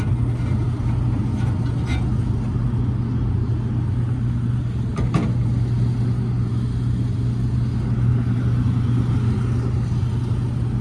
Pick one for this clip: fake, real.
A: real